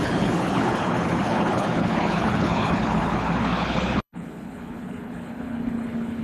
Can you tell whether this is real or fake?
fake